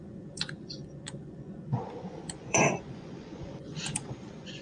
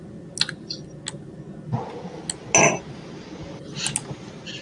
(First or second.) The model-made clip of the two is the first